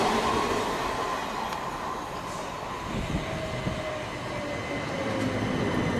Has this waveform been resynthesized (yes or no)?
no